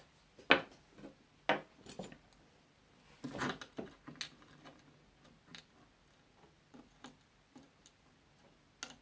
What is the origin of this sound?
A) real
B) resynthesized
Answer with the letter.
A